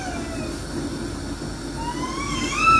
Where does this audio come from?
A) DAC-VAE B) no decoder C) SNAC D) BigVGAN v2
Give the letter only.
B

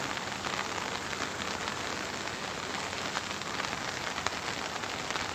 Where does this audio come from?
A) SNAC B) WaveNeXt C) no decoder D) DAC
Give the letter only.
C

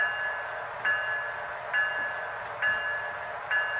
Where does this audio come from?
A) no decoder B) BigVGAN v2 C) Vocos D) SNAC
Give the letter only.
A